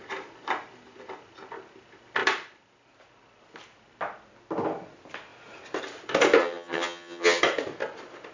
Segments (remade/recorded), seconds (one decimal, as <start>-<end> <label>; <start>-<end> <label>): 0.0-6.4 recorded; 6.4-7.4 remade; 7.4-8.3 recorded